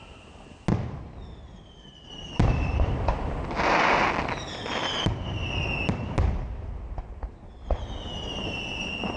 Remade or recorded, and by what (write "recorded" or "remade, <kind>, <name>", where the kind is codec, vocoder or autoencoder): recorded